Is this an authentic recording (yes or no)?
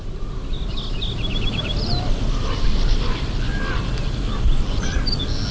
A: yes